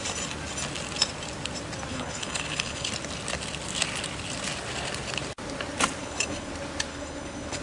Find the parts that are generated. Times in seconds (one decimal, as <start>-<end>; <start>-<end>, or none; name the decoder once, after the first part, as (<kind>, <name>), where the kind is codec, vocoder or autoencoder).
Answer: 1.9-2.9 (codec, HILCodec); 6.0-6.5; 6.9-7.6